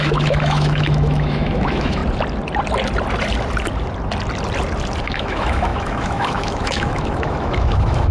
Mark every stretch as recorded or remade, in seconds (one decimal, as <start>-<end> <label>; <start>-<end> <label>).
0.0-2.0 remade; 2.0-5.0 recorded; 5.0-8.1 remade